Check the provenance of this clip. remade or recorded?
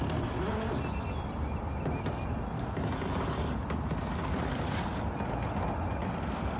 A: recorded